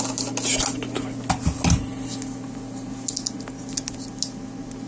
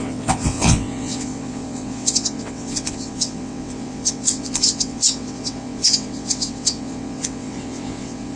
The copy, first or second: second